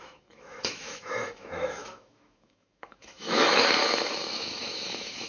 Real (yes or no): no